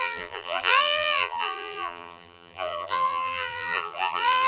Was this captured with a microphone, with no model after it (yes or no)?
no